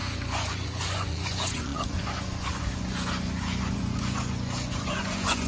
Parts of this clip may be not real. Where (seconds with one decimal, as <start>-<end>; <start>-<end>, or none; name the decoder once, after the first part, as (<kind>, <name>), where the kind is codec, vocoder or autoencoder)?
0.0-5.5 (vocoder, Vocos)

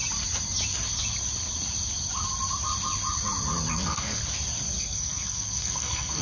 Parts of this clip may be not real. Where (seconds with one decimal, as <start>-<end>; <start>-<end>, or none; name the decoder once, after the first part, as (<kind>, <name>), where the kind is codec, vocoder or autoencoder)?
3.7-4.2 (codec, SNAC); 4.8-6.2

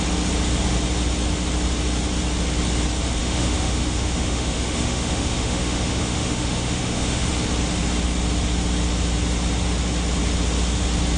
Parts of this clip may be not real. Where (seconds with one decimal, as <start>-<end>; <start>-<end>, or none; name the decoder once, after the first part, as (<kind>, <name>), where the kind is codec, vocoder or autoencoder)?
3.2-7.3 (autoencoder, DAC-VAE)

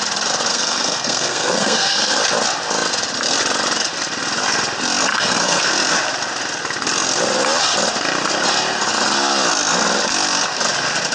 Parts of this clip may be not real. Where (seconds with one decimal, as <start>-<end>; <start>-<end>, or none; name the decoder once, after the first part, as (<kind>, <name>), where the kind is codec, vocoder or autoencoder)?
0.5-2.2 (codec, SNAC); 5.1-5.6

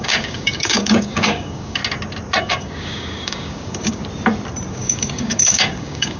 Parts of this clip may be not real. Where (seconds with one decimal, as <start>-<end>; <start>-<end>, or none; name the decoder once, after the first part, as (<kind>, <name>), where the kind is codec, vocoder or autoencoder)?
0.0-1.8 (codec, DAC); 2.4-4.0; 4.7-6.2

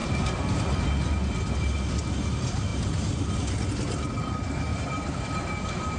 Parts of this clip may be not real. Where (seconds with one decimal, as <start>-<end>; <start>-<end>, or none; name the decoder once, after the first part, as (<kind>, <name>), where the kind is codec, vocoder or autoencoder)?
0.0-0.8 (vocoder, BigVGAN v2); 4.7-5.3

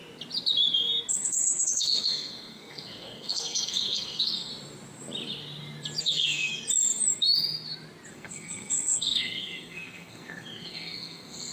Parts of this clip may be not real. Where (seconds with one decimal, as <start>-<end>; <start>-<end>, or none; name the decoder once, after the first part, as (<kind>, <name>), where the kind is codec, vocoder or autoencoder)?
1.1-4.5 (codec, SNAC); 6.0-6.5; 8.1-11.5

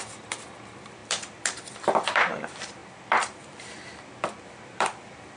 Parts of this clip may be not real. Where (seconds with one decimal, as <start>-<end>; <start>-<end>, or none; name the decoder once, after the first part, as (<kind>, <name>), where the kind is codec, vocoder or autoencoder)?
0.0-5.4 (vocoder, BigVGAN v2)